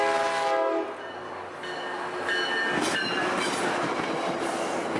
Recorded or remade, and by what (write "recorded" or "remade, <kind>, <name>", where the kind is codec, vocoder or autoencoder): recorded